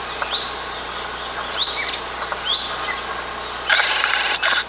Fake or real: real